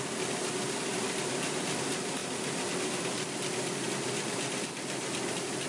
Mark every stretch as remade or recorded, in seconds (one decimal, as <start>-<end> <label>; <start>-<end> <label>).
0.0-5.7 recorded